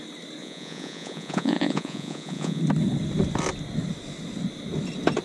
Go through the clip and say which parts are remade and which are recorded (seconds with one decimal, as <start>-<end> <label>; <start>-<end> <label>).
0.0-0.4 recorded; 0.4-2.6 remade; 2.6-5.2 recorded